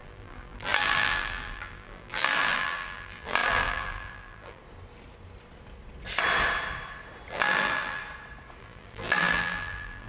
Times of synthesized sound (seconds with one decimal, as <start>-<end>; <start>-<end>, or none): 0.0-4.6; 7.3-8.0; 8.6-10.1